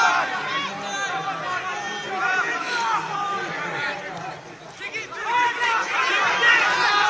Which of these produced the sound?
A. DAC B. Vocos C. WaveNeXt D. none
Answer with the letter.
D